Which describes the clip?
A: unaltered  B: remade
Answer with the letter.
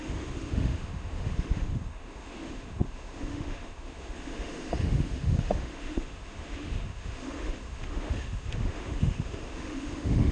B